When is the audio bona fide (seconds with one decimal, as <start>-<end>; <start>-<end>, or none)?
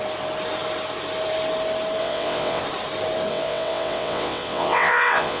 0.0-2.0; 2.6-3.3